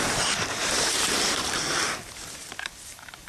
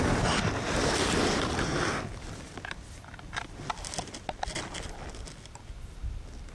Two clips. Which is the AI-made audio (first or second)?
first